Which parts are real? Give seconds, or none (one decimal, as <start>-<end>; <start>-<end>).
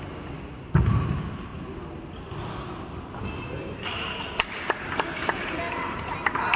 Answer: 0.0-6.6